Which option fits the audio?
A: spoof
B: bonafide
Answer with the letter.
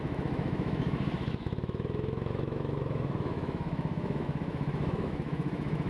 A